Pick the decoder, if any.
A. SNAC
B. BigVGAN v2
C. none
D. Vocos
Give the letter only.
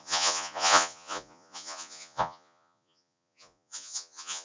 D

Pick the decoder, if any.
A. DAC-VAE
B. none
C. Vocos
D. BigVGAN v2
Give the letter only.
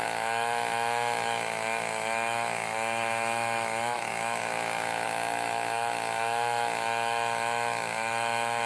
A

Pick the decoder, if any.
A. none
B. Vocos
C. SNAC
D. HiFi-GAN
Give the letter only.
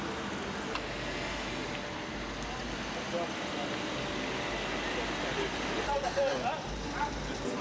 A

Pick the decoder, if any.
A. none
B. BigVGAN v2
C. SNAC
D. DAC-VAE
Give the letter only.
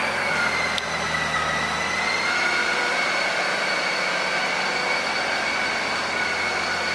A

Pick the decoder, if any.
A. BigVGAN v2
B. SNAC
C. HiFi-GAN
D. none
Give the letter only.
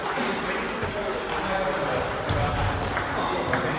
D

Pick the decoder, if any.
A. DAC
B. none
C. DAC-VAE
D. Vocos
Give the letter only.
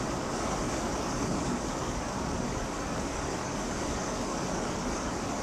A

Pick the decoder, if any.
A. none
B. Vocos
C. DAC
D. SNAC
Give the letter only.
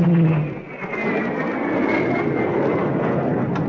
A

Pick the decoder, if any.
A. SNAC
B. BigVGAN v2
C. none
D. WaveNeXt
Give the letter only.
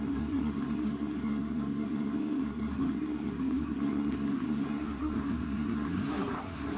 A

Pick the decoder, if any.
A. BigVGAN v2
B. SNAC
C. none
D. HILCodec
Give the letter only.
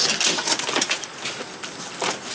C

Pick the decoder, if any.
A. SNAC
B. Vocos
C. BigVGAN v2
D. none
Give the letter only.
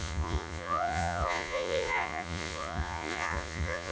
B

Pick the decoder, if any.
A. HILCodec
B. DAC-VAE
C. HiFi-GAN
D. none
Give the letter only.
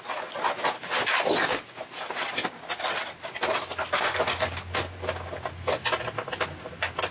D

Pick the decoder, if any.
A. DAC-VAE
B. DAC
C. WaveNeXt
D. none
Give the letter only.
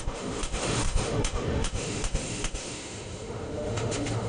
A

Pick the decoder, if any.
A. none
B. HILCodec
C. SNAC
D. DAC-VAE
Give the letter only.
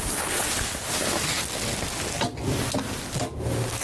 A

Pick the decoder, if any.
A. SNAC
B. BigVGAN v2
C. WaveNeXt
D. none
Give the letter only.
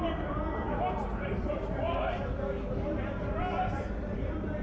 D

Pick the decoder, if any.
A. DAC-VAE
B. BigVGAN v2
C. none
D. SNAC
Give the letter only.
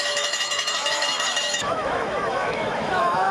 A